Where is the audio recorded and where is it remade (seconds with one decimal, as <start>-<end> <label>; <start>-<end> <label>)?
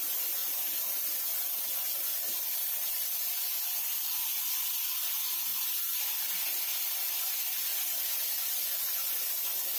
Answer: 0.0-5.5 recorded; 5.5-6.0 remade; 6.0-7.7 recorded; 7.7-8.8 remade; 8.8-9.8 recorded